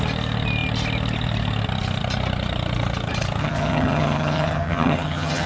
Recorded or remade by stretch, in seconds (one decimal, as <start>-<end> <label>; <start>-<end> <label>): 0.0-3.4 recorded; 3.4-5.5 remade